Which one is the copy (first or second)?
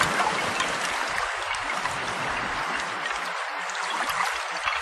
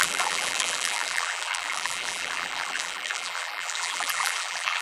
second